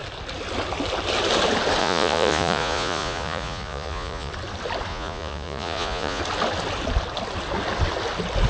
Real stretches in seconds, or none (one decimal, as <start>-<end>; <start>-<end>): 0.0-1.8; 4.3-4.9; 6.2-8.5